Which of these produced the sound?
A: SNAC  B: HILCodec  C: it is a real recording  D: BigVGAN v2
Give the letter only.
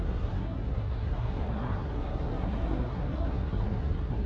A